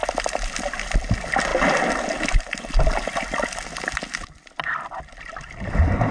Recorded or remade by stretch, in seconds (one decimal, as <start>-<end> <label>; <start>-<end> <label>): 0.0-6.1 recorded